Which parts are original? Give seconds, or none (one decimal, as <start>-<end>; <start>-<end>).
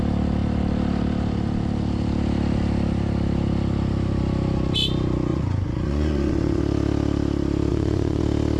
0.0-5.3; 6.6-7.7; 8.2-8.6